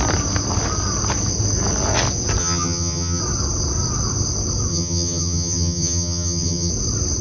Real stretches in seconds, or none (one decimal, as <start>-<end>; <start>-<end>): 0.0-2.4; 3.2-4.7; 6.7-7.2